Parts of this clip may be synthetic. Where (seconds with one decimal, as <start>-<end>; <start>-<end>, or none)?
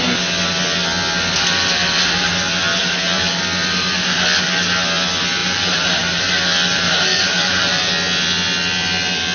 2.8-3.4; 5.4-6.3; 6.7-7.9